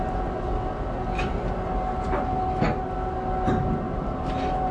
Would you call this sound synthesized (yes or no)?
no